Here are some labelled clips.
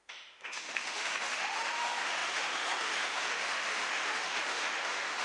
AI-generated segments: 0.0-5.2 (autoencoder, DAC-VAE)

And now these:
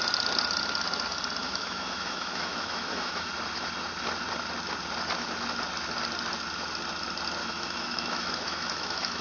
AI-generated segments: 1.4-3.3 (autoencoder, DAC-VAE); 7.4-9.2

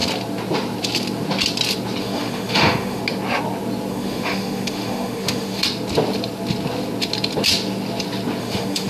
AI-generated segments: 2.0-3.0 (autoencoder, DAC-VAE); 3.9-5.6; 8.4-8.9

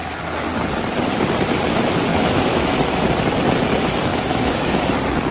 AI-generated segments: 2.1-3.0 (autoencoder, DAC-VAE); 4.1-4.8

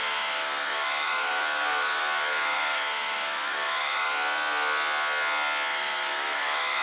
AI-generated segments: 0.0-4.1 (autoencoder, DAC-VAE); 5.7-6.8

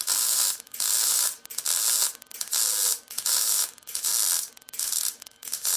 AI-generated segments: 0.0-1.3 (autoencoder, DAC-VAE); 3.1-4.1; 5.2-5.8

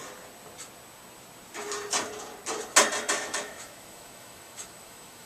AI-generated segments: 3.2-5.3 (autoencoder, DAC-VAE)